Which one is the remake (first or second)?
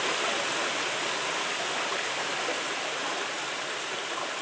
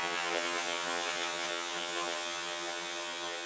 second